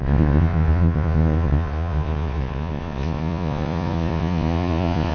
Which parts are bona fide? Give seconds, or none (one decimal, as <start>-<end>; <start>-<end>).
none

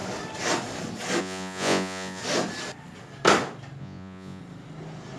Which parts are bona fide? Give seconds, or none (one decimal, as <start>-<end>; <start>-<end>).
0.0-1.2; 2.2-3.8; 4.4-5.2

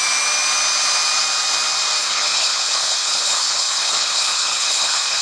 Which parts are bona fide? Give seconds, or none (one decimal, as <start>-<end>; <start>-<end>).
0.0-2.0

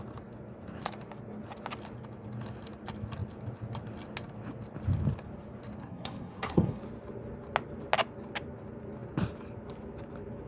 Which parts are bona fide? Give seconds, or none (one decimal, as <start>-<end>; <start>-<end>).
0.0-5.8; 6.8-10.5